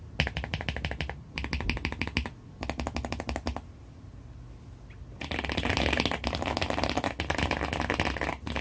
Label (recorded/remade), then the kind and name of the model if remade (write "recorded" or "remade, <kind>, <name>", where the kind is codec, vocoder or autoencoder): recorded